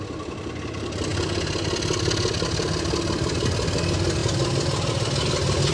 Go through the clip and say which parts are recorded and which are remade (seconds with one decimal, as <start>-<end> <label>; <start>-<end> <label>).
0.0-5.7 recorded